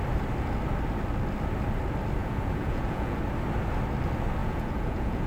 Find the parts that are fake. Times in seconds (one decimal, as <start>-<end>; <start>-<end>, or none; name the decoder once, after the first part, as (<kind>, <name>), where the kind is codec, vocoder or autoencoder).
2.2-3.2 (vocoder, Vocos); 4.4-5.3